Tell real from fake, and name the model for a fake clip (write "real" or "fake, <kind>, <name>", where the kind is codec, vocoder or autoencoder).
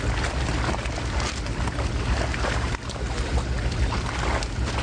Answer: real